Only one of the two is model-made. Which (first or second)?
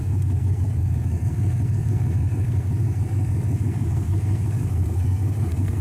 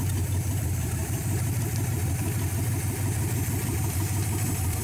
first